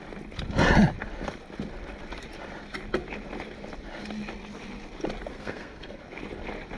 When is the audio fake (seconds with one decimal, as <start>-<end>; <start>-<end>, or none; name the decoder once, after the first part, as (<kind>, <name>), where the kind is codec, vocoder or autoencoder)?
5.3-6.0 (codec, SNAC)